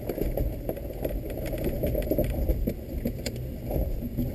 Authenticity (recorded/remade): recorded